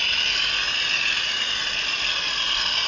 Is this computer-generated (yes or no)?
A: no